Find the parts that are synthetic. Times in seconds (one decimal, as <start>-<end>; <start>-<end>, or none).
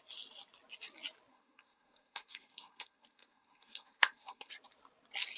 1.3-4.5